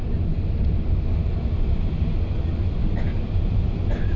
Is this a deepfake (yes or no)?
no